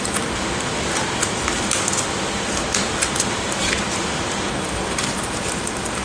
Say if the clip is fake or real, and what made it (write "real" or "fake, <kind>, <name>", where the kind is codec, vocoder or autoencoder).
real